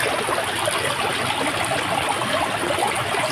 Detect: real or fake real